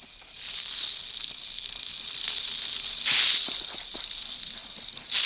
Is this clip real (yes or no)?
yes